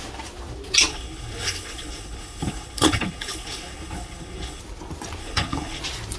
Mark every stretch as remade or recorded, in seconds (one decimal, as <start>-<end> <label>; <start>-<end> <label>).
0.0-0.9 recorded; 0.9-4.6 remade; 4.6-5.2 recorded; 5.2-5.8 remade; 5.8-6.2 recorded